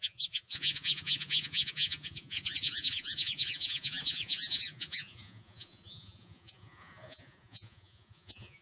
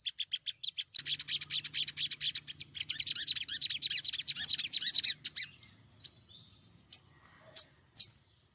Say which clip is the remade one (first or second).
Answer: first